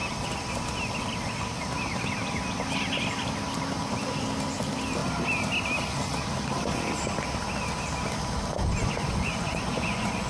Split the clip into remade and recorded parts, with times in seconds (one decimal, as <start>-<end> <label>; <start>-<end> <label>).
0.0-8.8 recorded; 8.8-10.3 remade